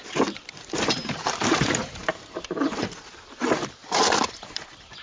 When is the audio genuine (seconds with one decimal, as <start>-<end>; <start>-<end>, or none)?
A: none